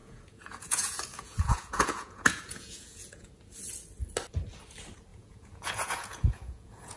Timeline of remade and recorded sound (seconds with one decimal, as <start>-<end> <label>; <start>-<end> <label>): 0.0-3.3 remade; 3.3-5.1 recorded; 5.1-7.0 remade

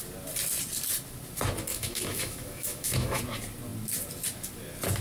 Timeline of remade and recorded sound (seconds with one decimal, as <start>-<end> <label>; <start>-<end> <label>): 0.0-1.7 recorded; 1.7-3.2 remade; 3.2-5.0 recorded

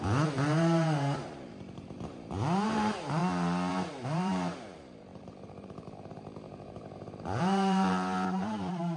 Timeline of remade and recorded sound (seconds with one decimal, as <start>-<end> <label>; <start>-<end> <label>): 0.0-3.2 remade; 3.2-3.7 recorded; 3.7-9.0 remade

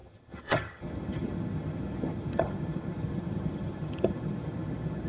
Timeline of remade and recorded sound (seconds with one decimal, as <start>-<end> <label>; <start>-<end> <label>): 0.0-5.1 remade